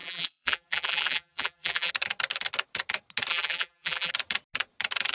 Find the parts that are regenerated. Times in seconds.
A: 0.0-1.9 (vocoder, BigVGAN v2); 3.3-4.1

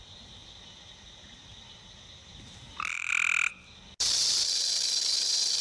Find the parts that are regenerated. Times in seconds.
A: 0.4-3.1 (vocoder, BigVGAN v2)